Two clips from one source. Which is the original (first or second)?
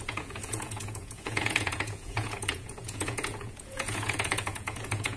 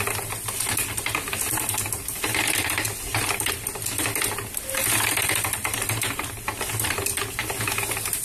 second